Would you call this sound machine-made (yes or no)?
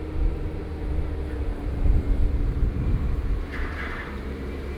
yes